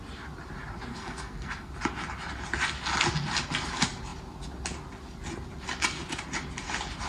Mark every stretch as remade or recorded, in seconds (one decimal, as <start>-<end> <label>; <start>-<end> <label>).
0.0-0.9 recorded; 0.9-1.7 remade; 1.7-7.1 recorded